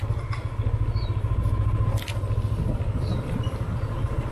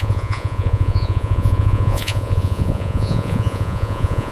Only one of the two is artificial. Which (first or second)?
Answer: second